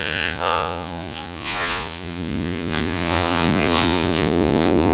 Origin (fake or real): fake